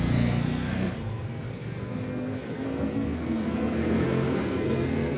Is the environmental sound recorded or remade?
remade